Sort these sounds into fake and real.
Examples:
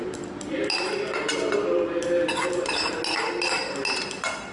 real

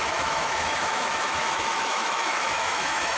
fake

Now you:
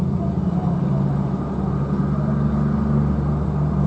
real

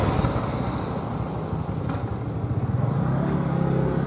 real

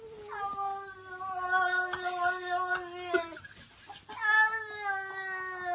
real